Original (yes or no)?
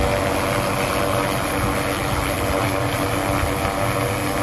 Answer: yes